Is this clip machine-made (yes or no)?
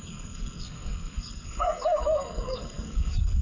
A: yes